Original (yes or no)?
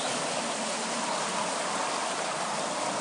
yes